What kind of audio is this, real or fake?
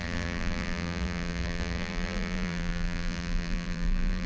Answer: fake